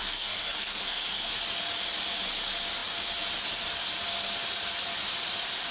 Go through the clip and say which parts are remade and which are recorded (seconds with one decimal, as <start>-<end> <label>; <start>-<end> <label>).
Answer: 0.0-1.3 remade; 1.3-5.7 recorded